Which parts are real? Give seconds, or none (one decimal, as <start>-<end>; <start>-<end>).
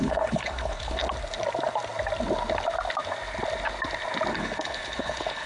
1.0-4.3